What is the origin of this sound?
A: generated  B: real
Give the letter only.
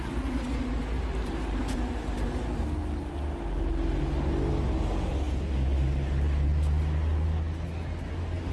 B